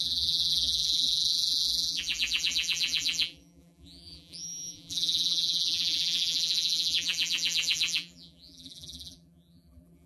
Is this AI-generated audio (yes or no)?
yes